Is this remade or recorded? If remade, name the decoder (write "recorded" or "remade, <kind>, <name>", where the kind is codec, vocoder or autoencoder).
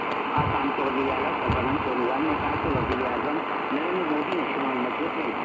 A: recorded